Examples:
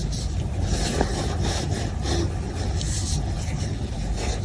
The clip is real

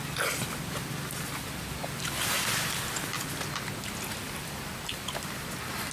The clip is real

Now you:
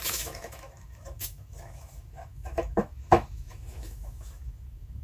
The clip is fake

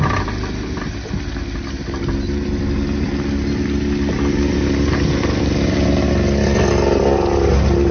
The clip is real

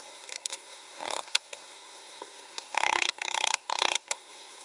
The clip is fake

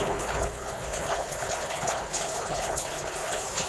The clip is fake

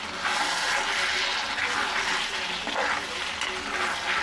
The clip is real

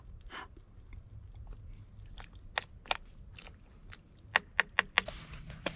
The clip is real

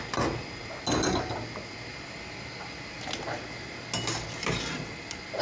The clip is real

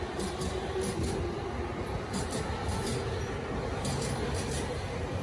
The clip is real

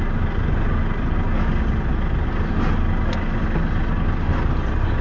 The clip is real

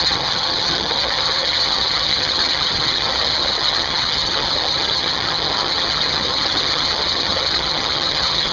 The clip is fake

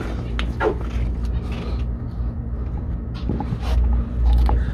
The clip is real